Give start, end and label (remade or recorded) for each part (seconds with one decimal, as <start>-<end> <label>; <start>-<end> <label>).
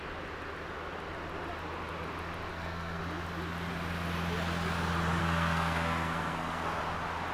0.0-2.5 recorded; 2.5-3.0 remade; 3.0-5.2 recorded; 5.2-6.8 remade; 6.8-7.3 recorded